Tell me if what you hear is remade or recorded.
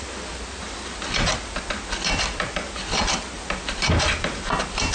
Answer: recorded